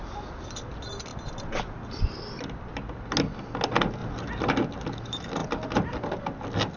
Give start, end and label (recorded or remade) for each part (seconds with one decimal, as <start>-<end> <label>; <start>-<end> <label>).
0.0-6.8 recorded